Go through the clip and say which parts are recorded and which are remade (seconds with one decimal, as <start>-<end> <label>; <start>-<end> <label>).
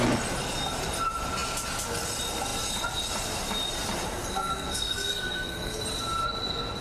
0.0-4.2 recorded; 4.2-5.8 remade; 5.8-6.8 recorded